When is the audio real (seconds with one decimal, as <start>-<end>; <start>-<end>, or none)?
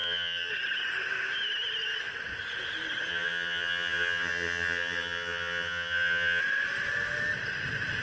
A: 0.5-3.1; 6.4-8.0